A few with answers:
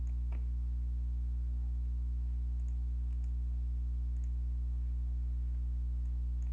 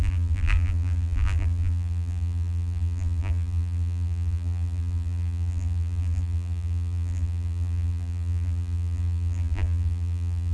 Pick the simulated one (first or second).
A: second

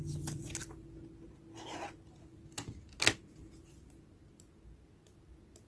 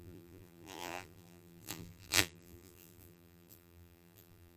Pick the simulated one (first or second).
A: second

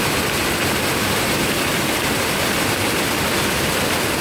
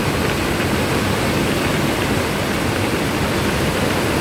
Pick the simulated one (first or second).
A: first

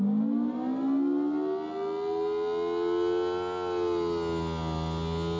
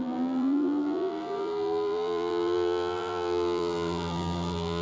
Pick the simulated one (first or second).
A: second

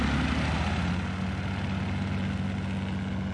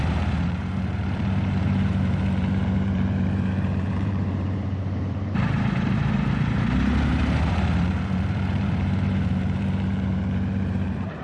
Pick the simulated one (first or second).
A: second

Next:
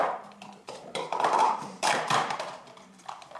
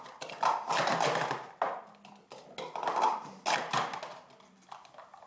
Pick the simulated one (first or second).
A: first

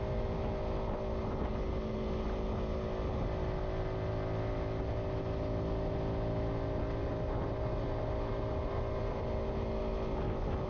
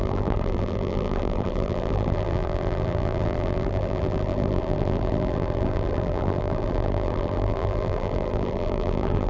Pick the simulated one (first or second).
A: second